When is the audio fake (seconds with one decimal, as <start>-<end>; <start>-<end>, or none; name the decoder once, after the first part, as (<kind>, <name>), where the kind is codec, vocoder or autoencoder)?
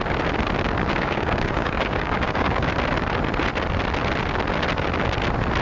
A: 0.9-2.7 (codec, DAC)